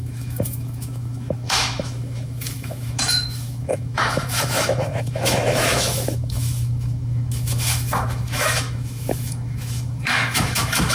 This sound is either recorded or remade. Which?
remade